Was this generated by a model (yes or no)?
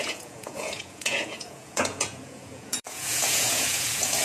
yes